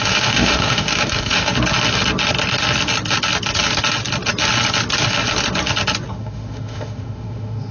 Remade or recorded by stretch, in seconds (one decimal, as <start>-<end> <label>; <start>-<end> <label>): 0.0-1.5 remade; 1.5-6.1 recorded; 6.1-7.7 remade